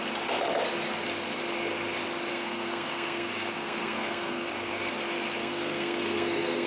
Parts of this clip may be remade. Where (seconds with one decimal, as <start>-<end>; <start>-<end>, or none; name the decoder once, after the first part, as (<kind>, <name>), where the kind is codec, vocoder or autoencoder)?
2.3-4.9 (codec, SNAC); 5.4-6.7